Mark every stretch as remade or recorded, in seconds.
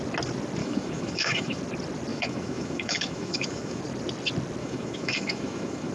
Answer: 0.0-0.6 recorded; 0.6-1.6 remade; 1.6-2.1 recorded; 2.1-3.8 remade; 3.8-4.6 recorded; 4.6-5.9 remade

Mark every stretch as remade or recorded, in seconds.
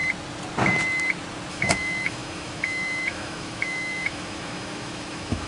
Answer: 0.0-1.5 recorded; 1.5-5.5 remade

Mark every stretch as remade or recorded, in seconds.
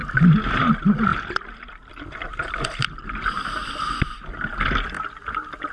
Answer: 0.0-5.7 recorded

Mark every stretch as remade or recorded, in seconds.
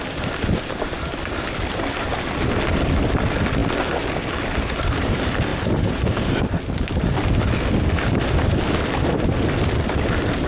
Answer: 0.0-10.5 recorded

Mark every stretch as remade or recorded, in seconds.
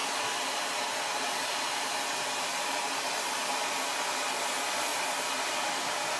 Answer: 0.0-6.2 recorded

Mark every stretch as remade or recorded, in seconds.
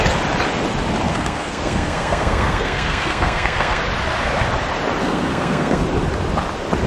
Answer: 0.0-1.1 recorded; 1.1-3.8 remade; 3.8-5.0 recorded; 5.0-5.8 remade; 5.8-6.9 recorded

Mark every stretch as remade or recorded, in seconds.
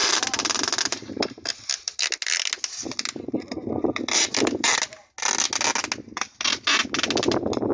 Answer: 0.0-7.7 recorded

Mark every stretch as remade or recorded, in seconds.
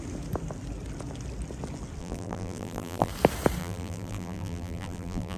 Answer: 0.0-2.0 recorded; 2.0-3.1 remade; 3.1-3.6 recorded; 3.6-5.4 remade